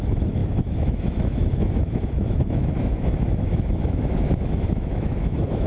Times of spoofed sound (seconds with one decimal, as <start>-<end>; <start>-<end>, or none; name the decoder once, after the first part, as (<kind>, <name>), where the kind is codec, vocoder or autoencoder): 0.0-5.7 (autoencoder, DAC-VAE)